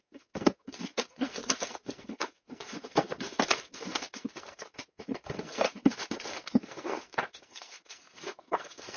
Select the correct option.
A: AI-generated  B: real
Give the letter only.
A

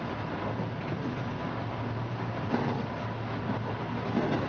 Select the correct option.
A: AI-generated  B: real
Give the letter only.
B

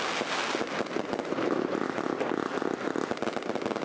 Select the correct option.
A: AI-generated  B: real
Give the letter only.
B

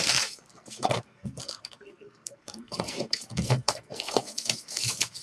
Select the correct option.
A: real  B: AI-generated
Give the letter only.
B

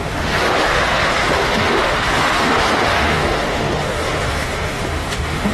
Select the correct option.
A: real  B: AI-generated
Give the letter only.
B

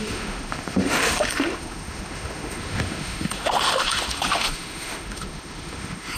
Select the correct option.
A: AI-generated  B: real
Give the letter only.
A